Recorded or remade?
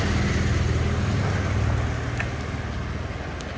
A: recorded